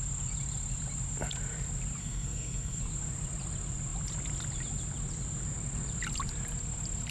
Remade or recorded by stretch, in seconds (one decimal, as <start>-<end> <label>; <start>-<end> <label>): 0.0-2.0 recorded; 2.0-2.8 remade; 2.8-7.1 recorded